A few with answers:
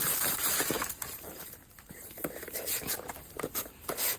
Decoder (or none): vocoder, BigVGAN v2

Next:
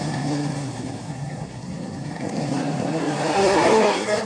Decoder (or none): codec, SNAC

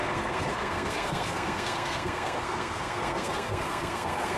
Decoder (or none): codec, SNAC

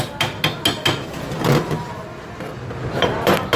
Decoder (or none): none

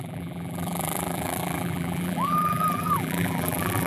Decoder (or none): vocoder, BigVGAN v2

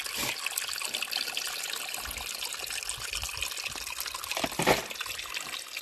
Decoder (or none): none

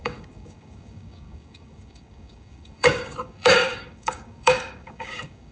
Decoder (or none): codec, DAC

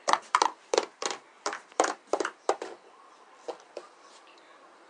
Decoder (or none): vocoder, BigVGAN v2